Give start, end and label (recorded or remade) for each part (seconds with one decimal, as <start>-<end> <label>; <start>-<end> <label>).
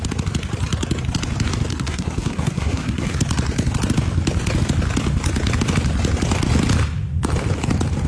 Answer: 0.0-1.7 recorded; 1.7-3.2 remade; 3.2-8.1 recorded